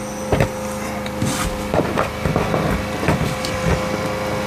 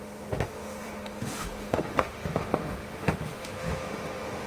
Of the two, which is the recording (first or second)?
first